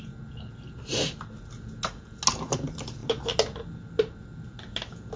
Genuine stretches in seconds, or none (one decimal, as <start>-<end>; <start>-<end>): 0.0-5.2